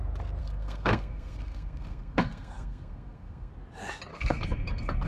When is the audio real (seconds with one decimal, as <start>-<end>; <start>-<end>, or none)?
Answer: 0.0-0.4; 3.5-4.1